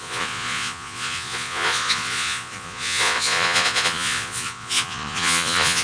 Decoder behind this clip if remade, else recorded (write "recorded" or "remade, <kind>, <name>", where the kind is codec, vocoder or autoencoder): remade, vocoder, Vocos